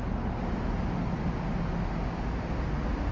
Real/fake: real